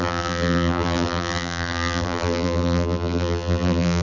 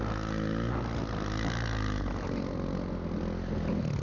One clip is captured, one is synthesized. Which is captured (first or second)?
second